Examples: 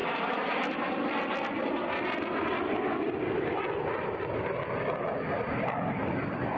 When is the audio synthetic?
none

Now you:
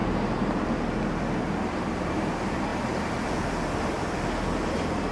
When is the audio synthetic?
0.0-0.7 (vocoder, BigVGAN v2)

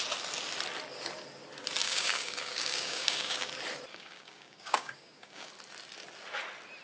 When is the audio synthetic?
1.8-3.5 (codec, DAC); 3.9-5.5

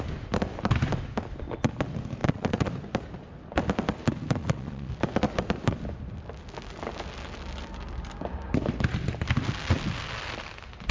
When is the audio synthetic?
2.2-2.7 (vocoder, Vocos); 4.4-4.9